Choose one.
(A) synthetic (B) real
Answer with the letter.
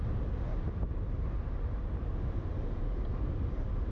B